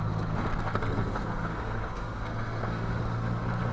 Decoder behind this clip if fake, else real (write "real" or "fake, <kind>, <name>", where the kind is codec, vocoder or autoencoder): fake, codec, SNAC